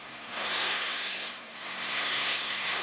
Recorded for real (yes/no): no